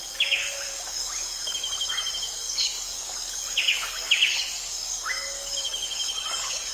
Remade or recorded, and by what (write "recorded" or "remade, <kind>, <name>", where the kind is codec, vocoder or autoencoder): remade, codec, DAC